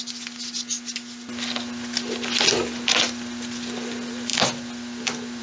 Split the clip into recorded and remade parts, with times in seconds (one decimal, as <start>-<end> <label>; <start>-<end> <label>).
0.0-5.4 recorded